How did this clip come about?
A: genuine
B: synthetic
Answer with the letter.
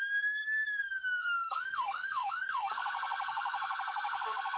B